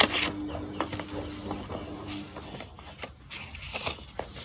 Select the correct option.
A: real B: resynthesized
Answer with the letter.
A